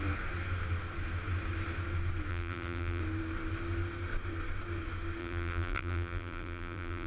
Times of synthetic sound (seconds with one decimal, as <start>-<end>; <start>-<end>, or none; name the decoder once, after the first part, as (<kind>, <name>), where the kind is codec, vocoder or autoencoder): 2.3-3.0 (vocoder, BigVGAN v2); 5.2-7.1